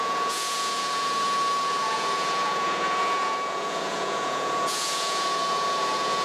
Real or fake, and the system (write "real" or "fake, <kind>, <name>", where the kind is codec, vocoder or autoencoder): fake, vocoder, Vocos